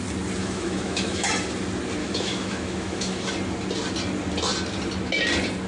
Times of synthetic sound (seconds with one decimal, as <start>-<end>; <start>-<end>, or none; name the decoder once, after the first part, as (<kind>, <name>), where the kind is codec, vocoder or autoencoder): 0.4-1.3 (autoencoder, DAC-VAE); 2.0-3.3